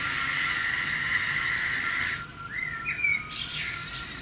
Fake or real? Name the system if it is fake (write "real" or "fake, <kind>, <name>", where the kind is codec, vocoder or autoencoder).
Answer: real